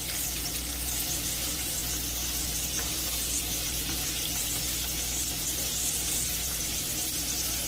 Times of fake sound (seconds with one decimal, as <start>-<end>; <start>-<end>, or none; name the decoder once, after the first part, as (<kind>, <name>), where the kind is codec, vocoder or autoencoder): 0.0-1.8 (vocoder, BigVGAN v2); 2.4-4.4; 5.3-7.7